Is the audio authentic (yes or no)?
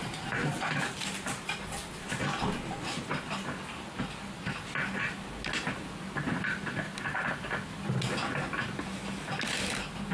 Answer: yes